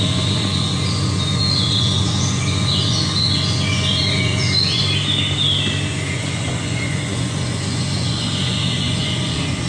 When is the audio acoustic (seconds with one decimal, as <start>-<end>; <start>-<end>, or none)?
4.8-5.9